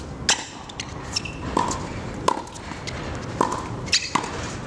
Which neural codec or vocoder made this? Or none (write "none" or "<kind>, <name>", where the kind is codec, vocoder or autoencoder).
none